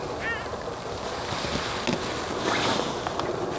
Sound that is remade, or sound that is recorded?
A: recorded